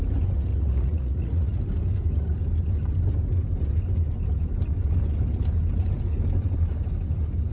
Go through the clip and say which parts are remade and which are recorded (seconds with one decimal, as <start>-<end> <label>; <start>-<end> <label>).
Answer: 0.0-0.5 recorded; 0.5-1.6 remade; 1.6-7.5 recorded